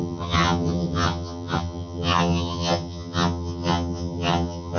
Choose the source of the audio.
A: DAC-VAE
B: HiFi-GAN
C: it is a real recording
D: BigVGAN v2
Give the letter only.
B